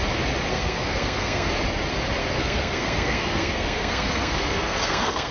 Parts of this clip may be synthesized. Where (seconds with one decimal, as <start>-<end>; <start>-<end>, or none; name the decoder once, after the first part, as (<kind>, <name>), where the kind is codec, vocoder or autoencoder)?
0.5-1.5 (codec, SNAC); 2.2-5.3